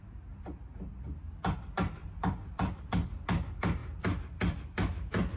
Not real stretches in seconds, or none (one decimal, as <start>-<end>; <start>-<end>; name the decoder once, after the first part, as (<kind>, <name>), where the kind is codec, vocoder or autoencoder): 2.0-2.8 (vocoder, BigVGAN v2); 3.8-5.4